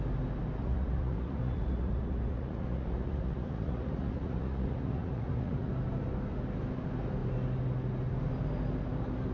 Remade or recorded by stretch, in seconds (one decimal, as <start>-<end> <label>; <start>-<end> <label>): 0.0-0.6 recorded; 0.6-5.7 remade; 5.7-9.3 recorded